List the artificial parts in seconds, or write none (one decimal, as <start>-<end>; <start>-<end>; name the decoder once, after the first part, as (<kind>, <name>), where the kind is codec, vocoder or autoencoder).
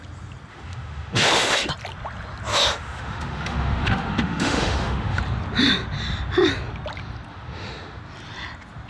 0.5-1.7 (autoencoder, DAC-VAE); 2.5-5.2; 7.3-8.0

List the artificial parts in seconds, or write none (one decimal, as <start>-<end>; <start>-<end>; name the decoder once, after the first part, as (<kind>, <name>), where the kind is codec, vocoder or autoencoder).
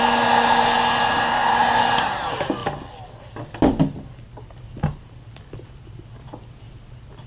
none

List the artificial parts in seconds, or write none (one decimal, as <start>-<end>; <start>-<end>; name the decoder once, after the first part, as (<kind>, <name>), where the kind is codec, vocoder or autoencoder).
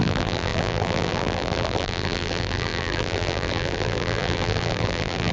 0.0-5.3 (vocoder, BigVGAN v2)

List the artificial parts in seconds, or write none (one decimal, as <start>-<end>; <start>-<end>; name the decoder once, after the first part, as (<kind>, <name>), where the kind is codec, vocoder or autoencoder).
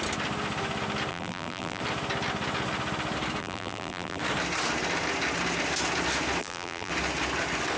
1.1-1.8 (vocoder, BigVGAN v2); 3.4-4.2; 6.4-6.9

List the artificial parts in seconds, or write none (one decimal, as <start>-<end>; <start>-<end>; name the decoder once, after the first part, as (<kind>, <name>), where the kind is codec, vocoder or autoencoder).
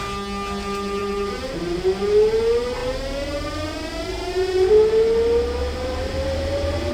1.0-1.8 (vocoder, BigVGAN v2); 5.6-6.9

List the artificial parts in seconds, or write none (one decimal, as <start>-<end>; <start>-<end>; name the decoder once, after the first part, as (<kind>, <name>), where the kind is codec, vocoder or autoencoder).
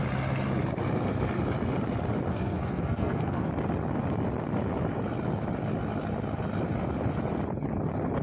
2.3-3.5 (codec, SNAC)